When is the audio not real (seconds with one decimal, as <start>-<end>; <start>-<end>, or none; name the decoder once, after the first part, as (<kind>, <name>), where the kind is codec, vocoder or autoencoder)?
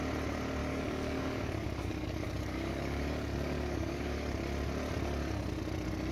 0.6-4.3 (codec, DAC)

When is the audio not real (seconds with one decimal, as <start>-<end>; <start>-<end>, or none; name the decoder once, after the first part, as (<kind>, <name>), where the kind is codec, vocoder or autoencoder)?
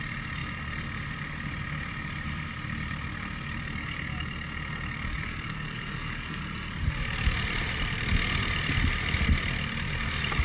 5.3-6.4 (codec, DAC)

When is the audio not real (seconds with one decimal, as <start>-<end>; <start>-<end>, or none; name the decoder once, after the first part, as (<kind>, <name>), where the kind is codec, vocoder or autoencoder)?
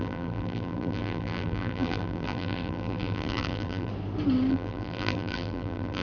0.0-3.9 (vocoder, BigVGAN v2); 4.5-6.0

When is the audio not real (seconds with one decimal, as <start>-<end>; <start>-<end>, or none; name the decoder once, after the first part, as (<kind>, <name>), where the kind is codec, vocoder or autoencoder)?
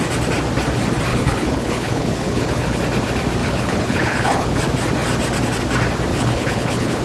1.1-2.8 (codec, HILCodec); 3.4-4.6; 6.1-7.0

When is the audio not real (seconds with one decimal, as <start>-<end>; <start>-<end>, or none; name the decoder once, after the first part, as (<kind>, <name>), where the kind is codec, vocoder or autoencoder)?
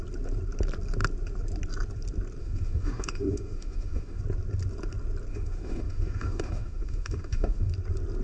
2.4-4.2 (autoencoder, DAC-VAE); 5.3-7.7